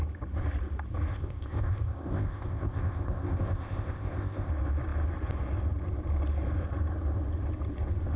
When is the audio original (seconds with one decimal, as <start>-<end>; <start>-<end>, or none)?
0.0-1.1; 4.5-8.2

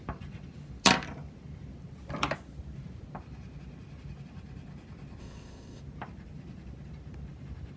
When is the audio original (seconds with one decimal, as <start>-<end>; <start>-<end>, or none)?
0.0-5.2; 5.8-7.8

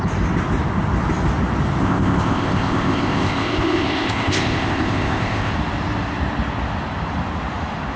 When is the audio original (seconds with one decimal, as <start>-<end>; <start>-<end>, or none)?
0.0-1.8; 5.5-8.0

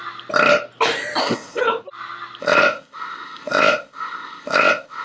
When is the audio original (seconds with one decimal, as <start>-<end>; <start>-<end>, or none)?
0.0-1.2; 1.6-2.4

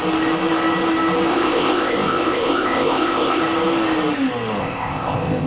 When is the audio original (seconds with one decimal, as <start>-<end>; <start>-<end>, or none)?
0.0-1.3; 3.4-4.6

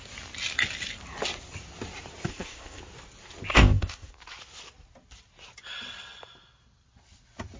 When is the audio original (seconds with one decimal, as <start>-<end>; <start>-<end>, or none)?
0.0-2.3; 2.8-3.5; 4.1-7.6

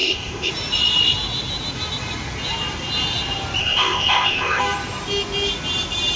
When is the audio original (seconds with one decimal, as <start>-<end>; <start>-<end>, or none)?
0.5-3.6; 4.6-6.2

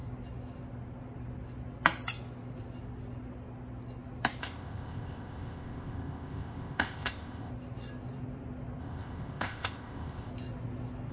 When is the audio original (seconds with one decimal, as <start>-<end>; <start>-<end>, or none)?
0.0-4.4; 7.5-8.8; 10.3-11.1